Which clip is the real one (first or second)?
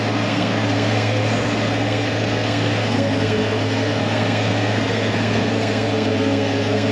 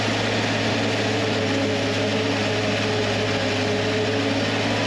second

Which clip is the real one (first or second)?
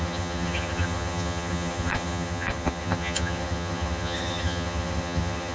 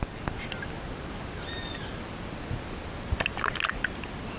second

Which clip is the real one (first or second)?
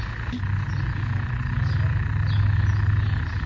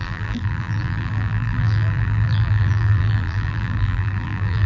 first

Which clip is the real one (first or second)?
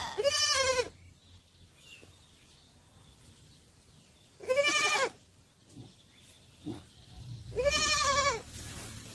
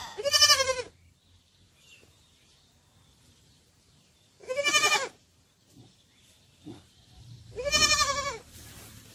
first